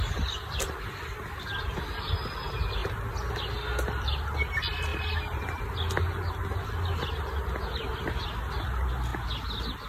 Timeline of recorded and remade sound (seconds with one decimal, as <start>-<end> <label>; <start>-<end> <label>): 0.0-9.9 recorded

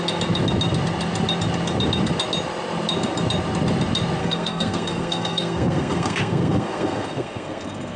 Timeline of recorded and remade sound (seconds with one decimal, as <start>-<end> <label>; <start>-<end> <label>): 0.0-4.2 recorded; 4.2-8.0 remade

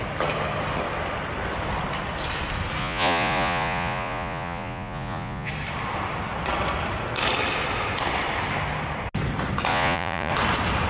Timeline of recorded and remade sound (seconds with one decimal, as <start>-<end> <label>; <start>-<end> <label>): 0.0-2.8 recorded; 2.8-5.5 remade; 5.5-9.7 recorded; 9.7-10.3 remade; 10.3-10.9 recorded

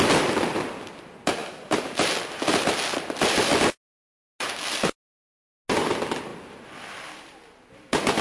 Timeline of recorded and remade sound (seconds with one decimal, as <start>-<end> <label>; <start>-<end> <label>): 0.0-8.2 recorded

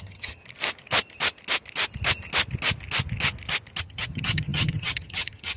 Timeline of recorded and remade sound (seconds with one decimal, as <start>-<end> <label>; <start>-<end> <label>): 0.0-0.4 remade; 0.4-3.8 recorded; 3.8-5.6 remade

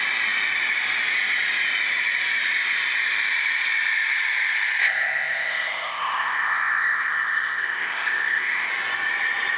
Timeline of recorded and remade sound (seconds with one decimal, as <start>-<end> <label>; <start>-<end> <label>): 0.0-4.8 recorded; 4.8-8.7 remade; 8.7-9.6 recorded